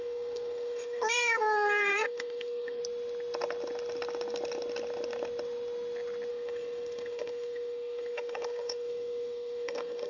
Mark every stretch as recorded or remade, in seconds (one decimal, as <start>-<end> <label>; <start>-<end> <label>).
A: 0.0-2.8 remade; 2.8-6.3 recorded; 6.3-10.1 remade